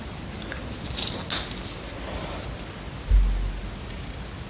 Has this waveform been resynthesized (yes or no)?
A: no